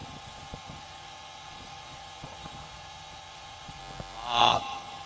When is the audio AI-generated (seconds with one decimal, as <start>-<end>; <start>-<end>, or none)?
0.0-3.8; 4.4-5.1